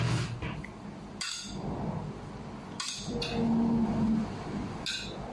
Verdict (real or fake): real